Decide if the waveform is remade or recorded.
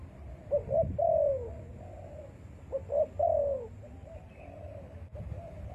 recorded